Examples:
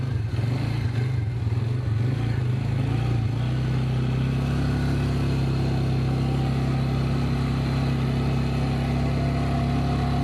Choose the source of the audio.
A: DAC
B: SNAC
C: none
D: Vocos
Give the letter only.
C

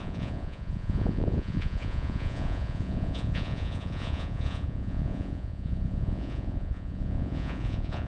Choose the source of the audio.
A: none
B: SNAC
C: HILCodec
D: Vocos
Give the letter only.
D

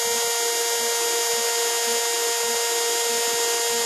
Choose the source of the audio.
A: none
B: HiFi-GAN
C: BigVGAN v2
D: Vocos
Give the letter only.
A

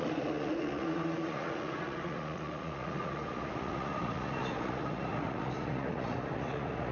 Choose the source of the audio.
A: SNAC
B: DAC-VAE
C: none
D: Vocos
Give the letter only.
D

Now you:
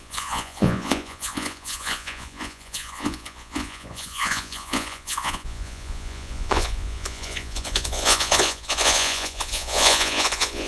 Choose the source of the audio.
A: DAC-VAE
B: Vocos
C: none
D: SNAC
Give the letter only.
B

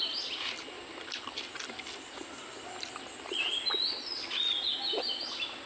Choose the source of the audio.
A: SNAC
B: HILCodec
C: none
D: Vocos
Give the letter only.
C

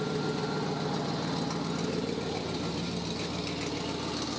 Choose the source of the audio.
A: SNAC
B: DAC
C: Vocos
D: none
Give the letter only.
D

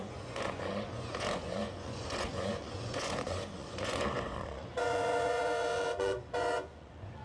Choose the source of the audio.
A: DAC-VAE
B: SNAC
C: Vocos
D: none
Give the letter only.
C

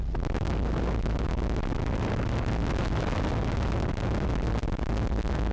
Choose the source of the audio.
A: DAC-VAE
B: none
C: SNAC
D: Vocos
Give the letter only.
B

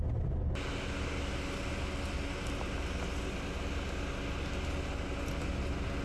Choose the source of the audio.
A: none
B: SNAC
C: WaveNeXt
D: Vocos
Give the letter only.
A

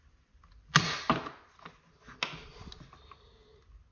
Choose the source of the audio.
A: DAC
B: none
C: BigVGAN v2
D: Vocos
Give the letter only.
B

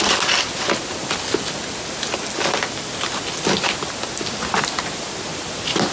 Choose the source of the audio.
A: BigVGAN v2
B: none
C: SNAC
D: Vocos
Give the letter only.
B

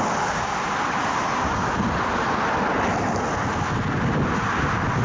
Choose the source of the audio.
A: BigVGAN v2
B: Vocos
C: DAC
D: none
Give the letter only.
D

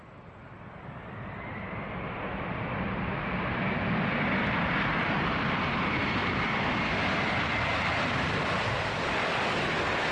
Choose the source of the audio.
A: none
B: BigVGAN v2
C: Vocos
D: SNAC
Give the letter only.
A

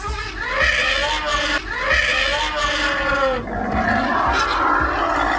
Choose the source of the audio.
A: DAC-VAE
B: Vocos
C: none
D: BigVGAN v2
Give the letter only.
C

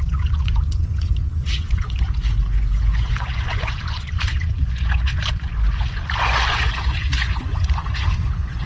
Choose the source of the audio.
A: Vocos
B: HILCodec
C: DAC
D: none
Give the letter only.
A